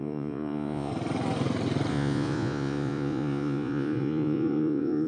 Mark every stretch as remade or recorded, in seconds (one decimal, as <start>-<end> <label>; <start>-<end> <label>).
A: 0.0-0.9 remade; 0.9-1.9 recorded; 1.9-5.1 remade